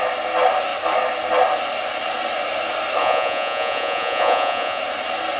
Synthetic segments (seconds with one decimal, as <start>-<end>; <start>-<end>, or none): 3.0-4.8